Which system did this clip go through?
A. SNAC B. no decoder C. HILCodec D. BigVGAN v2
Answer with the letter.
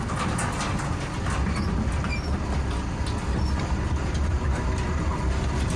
B